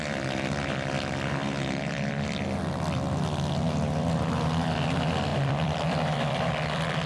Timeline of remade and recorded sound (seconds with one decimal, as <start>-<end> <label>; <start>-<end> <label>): 0.0-5.3 recorded; 5.3-7.1 remade